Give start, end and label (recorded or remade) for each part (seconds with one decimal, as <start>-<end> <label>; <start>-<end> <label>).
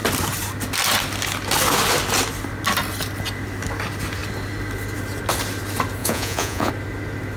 0.0-6.0 recorded; 6.0-6.7 remade; 6.7-7.4 recorded